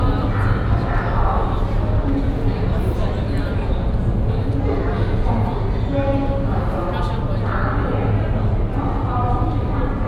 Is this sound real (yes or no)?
yes